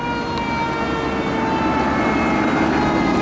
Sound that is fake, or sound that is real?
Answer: real